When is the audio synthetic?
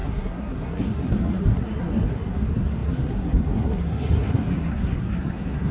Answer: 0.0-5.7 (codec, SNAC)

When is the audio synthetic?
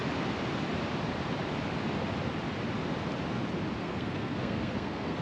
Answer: 3.8-5.2 (codec, SNAC)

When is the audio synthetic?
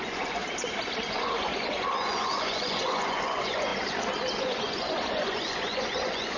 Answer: 0.0-0.4 (vocoder, Vocos); 1.1-3.7; 4.4-6.4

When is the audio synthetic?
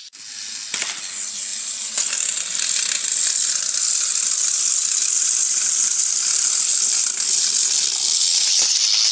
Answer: none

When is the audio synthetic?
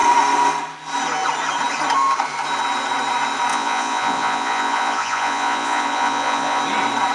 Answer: 3.5-6.6 (vocoder, Vocos)